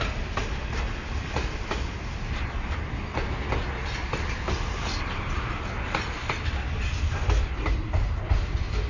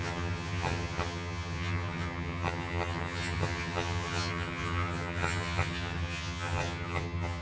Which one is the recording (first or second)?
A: first